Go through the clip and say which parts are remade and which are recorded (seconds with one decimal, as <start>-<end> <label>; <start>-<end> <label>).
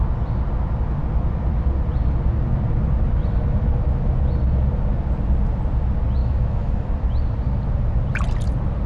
0.0-6.2 recorded; 6.2-6.9 remade; 6.9-8.9 recorded